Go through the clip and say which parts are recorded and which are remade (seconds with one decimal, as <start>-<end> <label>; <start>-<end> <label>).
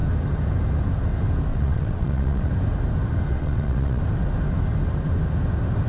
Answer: 0.0-1.5 recorded; 1.5-2.5 remade; 2.5-3.3 recorded; 3.3-4.0 remade; 4.0-5.9 recorded